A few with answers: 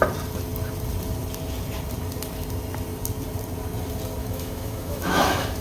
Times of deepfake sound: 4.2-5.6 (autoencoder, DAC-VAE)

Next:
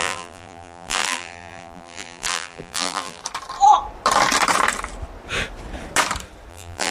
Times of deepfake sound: 0.0-3.2 (vocoder, BigVGAN v2); 6.5-6.9

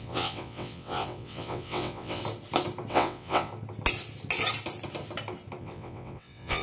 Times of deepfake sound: 0.0-2.2 (vocoder, WaveNeXt); 2.9-3.5; 5.6-6.6

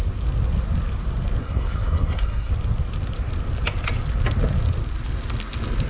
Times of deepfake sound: 1.4-2.5 (codec, SNAC)

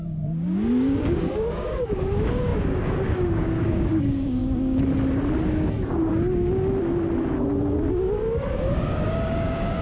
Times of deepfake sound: 0.0-4.4 (codec, DAC); 7.9-9.8

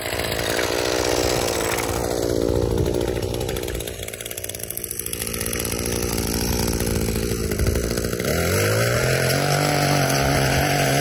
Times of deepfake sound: none